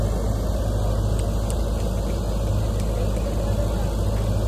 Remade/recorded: recorded